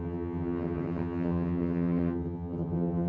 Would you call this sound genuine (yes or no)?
no